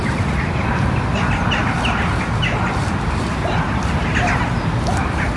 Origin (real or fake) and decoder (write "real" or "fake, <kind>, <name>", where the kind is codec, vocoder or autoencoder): real